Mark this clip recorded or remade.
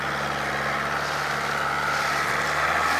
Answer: remade